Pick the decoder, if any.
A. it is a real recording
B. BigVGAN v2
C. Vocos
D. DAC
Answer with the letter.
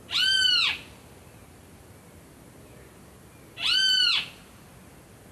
A